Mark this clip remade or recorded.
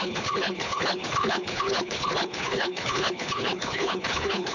remade